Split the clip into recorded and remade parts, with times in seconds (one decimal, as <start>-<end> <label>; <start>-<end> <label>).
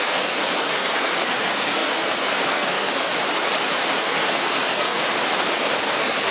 0.0-3.1 remade; 3.1-4.0 recorded; 4.0-5.0 remade; 5.0-5.8 recorded; 5.8-6.3 remade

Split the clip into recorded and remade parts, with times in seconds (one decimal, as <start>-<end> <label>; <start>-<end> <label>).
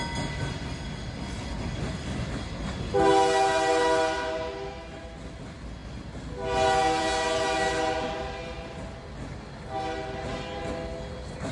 0.0-11.5 recorded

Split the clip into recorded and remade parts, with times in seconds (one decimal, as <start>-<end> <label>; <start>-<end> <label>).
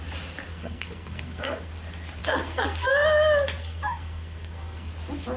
0.0-0.5 recorded; 0.5-1.7 remade; 1.7-2.2 recorded; 2.2-2.9 remade; 2.9-3.6 recorded; 3.6-4.9 remade; 4.9-5.4 recorded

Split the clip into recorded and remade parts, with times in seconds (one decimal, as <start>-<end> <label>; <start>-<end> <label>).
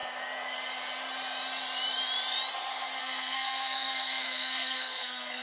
0.0-3.0 recorded; 3.0-5.4 remade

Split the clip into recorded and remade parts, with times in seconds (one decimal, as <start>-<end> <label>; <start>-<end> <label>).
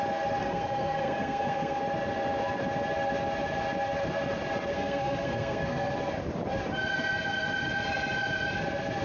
0.0-0.4 recorded; 0.4-1.8 remade; 1.8-4.7 recorded; 4.7-5.9 remade; 5.9-9.0 recorded